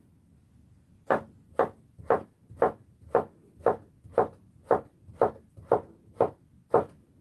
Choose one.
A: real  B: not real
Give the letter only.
A